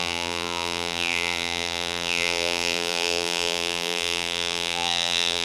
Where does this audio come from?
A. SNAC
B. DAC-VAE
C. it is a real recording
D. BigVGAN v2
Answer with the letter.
D